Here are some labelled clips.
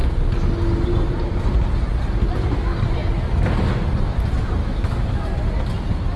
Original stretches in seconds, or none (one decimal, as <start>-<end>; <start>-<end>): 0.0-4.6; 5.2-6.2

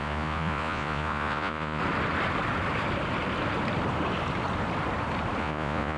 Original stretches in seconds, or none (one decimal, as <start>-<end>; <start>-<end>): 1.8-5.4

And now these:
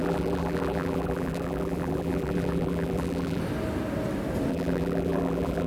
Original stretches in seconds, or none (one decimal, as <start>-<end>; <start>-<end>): 3.4-4.5

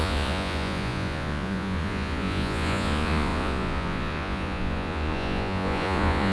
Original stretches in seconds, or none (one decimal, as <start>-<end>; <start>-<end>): none

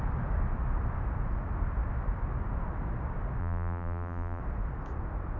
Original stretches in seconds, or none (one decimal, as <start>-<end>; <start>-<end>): 0.0-3.4; 4.4-5.4

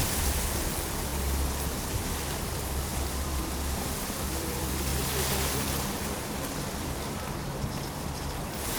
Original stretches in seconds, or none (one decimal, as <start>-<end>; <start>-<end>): 1.1-1.9; 4.9-5.5

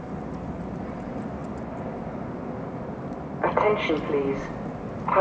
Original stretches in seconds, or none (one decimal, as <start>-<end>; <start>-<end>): 0.0-5.2